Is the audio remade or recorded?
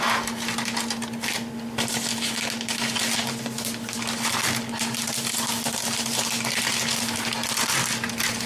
recorded